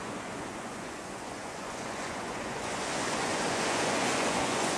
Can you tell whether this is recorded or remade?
remade